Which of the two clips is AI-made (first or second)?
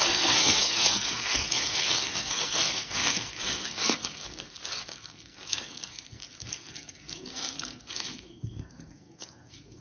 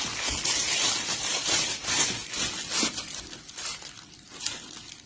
first